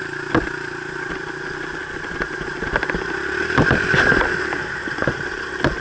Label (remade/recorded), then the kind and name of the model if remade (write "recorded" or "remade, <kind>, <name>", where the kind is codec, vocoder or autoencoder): recorded